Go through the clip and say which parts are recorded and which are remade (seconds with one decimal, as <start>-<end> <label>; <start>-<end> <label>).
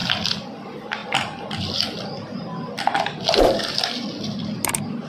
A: 0.0-5.1 recorded